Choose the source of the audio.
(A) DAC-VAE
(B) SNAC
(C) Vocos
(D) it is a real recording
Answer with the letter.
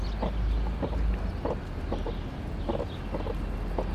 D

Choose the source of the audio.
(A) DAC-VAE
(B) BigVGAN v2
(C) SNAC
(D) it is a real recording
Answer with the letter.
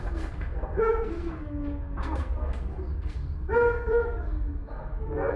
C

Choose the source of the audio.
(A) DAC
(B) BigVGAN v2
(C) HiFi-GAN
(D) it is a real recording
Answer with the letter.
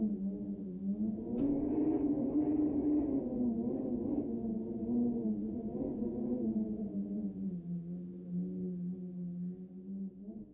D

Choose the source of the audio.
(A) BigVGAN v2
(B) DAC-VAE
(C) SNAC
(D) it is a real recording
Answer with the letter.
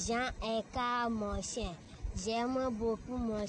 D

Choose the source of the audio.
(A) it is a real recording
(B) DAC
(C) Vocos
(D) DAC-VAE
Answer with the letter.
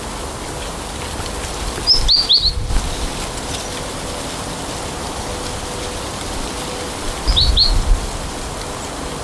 A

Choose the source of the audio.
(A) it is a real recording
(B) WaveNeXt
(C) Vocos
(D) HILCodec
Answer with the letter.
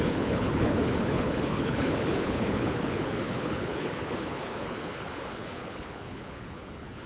D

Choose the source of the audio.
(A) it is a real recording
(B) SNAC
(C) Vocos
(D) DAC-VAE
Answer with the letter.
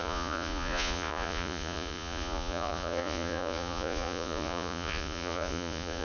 C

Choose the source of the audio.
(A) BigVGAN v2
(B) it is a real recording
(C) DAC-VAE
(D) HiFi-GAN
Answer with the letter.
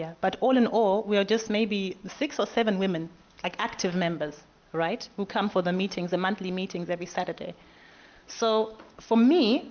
B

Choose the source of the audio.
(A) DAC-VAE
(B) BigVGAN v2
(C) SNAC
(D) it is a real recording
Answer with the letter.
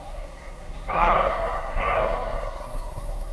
C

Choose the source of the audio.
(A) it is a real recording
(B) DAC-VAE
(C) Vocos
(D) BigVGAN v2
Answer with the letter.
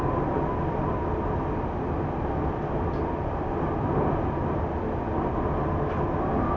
A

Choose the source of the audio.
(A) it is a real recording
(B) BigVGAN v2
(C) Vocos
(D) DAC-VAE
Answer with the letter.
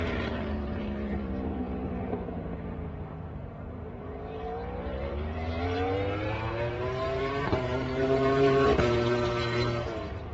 B